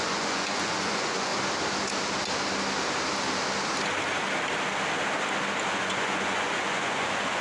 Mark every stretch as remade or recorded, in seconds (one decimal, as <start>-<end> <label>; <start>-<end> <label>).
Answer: 0.0-1.3 remade; 1.3-5.7 recorded; 5.7-7.4 remade